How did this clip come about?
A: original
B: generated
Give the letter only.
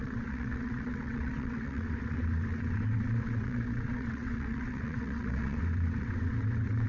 B